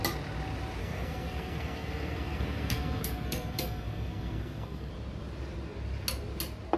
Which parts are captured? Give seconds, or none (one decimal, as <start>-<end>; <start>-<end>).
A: 0.0-0.8; 4.9-6.8